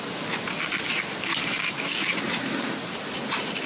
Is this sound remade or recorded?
recorded